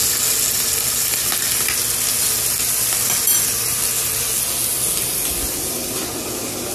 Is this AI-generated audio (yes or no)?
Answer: no